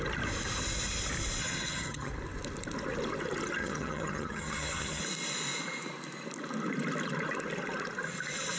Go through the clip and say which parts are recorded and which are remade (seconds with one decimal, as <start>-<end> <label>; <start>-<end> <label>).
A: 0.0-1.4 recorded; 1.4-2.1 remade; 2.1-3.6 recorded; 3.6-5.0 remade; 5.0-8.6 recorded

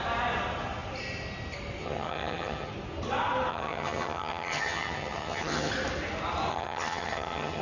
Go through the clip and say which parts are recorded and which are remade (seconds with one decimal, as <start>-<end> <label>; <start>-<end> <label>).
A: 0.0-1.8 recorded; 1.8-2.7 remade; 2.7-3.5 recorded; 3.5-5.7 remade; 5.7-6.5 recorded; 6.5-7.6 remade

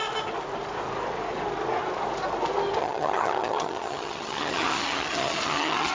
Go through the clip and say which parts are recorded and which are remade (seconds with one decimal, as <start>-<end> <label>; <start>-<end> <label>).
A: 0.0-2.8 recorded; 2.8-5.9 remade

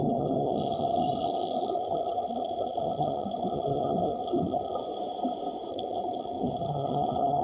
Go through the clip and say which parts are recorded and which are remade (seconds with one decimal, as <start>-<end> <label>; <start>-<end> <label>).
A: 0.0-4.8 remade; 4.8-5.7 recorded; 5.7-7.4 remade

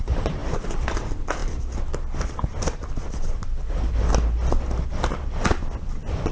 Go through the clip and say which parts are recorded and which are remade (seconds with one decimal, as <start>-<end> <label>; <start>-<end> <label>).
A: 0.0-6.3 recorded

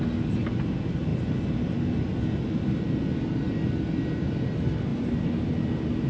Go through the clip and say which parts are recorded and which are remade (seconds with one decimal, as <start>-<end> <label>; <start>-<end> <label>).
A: 0.0-6.1 recorded

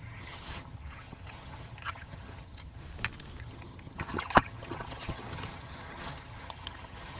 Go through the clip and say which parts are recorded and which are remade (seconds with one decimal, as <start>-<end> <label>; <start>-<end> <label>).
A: 0.0-2.8 remade; 2.8-3.4 recorded; 3.4-7.2 remade